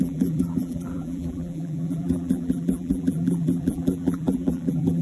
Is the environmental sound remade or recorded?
remade